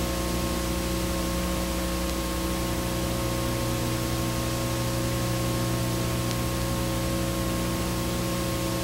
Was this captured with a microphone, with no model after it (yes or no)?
yes